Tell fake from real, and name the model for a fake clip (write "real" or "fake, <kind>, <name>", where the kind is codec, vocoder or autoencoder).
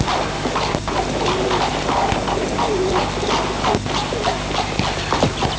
real